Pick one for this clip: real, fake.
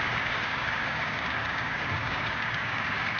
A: fake